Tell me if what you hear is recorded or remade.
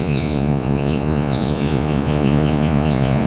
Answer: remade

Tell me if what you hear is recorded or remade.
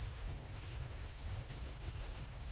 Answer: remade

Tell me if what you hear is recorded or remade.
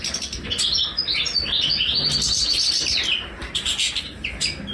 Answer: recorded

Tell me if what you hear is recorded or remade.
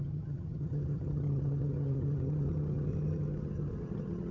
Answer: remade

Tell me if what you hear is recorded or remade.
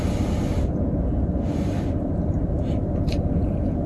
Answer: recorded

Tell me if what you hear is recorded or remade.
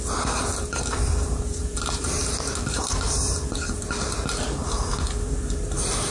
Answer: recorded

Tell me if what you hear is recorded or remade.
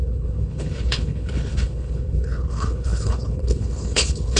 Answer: remade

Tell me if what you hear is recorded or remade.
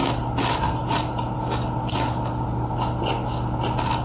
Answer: recorded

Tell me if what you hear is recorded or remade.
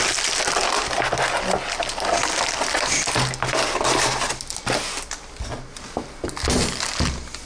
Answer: recorded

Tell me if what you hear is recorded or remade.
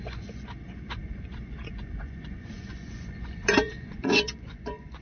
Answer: remade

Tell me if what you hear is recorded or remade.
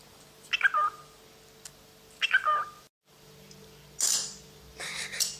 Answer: recorded